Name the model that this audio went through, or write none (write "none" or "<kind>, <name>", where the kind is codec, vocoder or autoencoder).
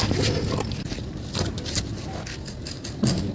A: none